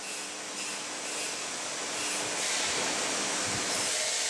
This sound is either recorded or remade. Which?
recorded